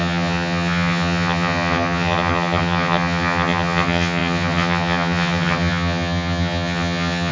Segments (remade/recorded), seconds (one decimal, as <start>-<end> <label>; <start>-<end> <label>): 0.0-7.3 remade